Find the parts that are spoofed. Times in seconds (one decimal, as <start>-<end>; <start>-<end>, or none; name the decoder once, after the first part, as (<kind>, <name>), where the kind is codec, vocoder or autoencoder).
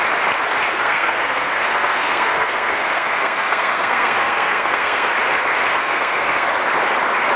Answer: 0.7-5.1 (codec, SNAC); 5.7-6.5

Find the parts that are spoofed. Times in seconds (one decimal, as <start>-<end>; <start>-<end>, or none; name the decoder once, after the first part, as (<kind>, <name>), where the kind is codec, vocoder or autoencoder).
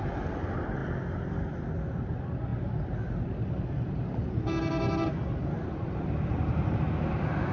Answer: none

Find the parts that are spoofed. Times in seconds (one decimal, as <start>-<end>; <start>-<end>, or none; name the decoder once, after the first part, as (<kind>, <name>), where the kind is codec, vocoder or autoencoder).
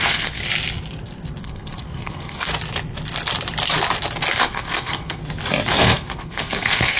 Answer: 0.0-0.4 (codec, SNAC); 1.4-2.5; 4.4-5.2; 5.8-7.0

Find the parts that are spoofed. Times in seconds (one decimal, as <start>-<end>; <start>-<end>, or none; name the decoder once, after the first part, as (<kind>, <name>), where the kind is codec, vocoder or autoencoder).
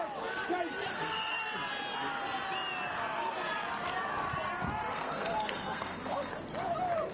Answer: 0.9-1.4 (codec, SNAC); 4.9-6.3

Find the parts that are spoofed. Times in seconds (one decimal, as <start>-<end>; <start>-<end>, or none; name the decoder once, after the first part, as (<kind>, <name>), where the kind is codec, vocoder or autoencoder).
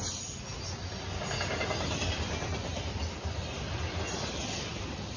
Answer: none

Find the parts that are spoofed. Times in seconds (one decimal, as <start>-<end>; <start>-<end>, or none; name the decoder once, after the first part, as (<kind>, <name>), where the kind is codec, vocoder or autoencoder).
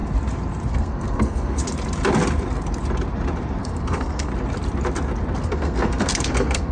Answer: 0.7-1.6 (codec, SNAC); 3.6-4.3; 5.4-6.7